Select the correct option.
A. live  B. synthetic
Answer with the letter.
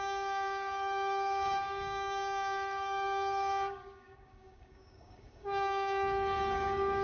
B